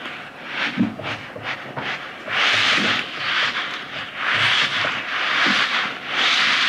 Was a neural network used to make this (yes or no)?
no